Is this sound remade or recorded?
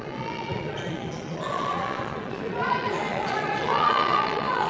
remade